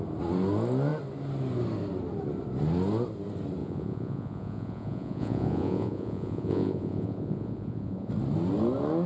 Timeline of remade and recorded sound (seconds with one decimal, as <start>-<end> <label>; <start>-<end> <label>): 0.0-3.6 recorded; 3.6-8.1 remade; 8.1-9.1 recorded